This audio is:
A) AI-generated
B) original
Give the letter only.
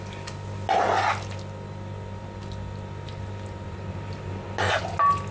B